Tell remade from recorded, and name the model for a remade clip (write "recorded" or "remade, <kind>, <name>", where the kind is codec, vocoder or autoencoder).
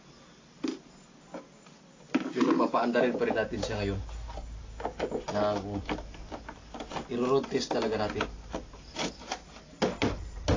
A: recorded